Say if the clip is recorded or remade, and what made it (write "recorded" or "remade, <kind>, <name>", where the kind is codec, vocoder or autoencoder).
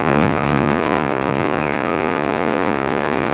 remade, vocoder, Vocos